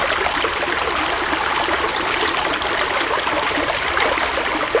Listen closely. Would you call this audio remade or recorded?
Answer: recorded